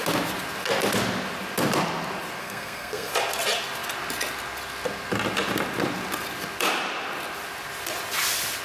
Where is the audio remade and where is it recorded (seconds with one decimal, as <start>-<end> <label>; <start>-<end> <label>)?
0.0-2.4 recorded; 2.4-3.1 remade; 3.1-8.6 recorded